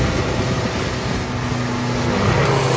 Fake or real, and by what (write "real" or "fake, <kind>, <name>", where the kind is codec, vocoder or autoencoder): real